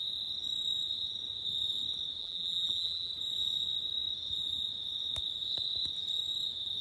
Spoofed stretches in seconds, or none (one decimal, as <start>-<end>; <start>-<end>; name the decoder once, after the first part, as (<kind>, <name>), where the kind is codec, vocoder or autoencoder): 2.2-3.1 (vocoder, BigVGAN v2)